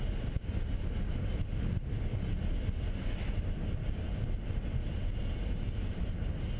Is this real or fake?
real